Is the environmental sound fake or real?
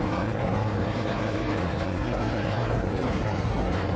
fake